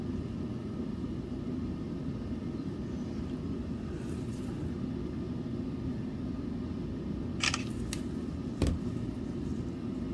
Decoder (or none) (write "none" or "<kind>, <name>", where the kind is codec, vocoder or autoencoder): none